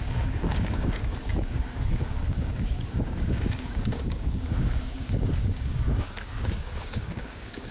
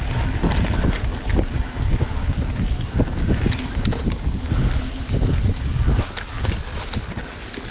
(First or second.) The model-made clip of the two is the first